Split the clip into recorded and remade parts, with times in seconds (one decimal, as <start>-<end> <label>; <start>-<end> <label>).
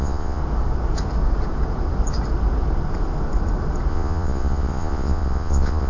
0.0-0.4 remade; 0.4-3.9 recorded; 3.9-5.9 remade